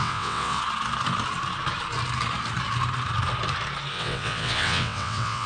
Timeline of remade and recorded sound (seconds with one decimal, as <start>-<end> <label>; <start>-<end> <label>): 0.0-0.6 remade; 0.6-3.9 recorded; 3.9-5.5 remade